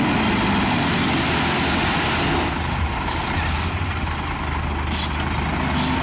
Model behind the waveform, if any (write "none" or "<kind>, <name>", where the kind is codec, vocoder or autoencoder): none